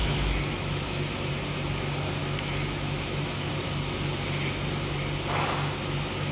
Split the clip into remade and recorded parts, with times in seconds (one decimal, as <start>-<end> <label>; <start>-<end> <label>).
0.0-1.3 remade; 1.3-2.2 recorded; 2.2-3.5 remade; 3.5-6.3 recorded